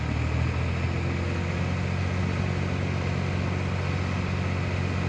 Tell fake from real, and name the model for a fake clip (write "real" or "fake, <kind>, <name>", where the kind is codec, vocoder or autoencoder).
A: real